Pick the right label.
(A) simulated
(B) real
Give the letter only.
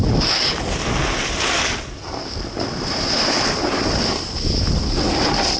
B